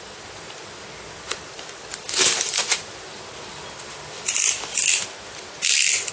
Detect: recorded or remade recorded